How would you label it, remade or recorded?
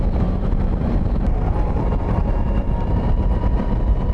remade